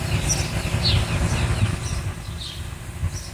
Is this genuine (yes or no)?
yes